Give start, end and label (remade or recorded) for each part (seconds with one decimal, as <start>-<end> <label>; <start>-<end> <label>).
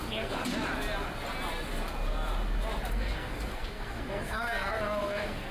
0.0-0.4 remade; 0.4-2.9 recorded; 2.9-5.5 remade